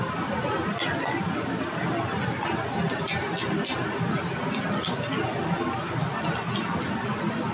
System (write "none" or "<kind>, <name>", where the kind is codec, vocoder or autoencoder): none